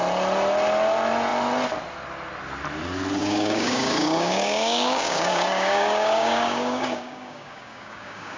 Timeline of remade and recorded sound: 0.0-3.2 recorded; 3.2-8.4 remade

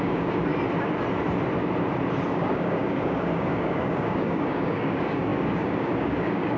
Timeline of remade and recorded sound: 0.0-0.5 remade; 0.5-2.3 recorded; 2.3-6.6 remade

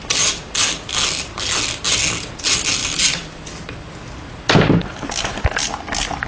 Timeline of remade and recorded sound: 0.0-6.3 recorded

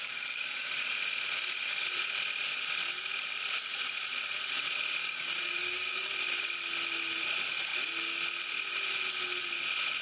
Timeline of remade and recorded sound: 0.0-0.7 remade; 0.7-5.0 recorded; 5.0-6.1 remade; 6.1-10.0 recorded

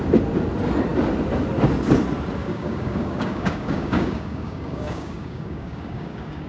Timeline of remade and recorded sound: 0.0-2.4 recorded; 2.4-6.5 remade

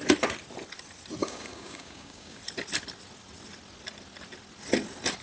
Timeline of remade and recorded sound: 0.0-1.2 recorded; 1.2-2.4 remade; 2.4-5.2 recorded

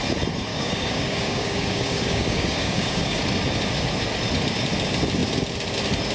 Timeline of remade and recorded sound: 0.0-0.5 recorded; 0.5-3.2 remade; 3.2-6.1 recorded

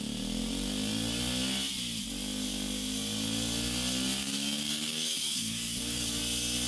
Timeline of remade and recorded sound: 0.0-4.2 recorded; 4.2-6.2 remade; 6.2-6.7 recorded